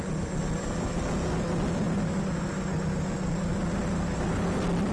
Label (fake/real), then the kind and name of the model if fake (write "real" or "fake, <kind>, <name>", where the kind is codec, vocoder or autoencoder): real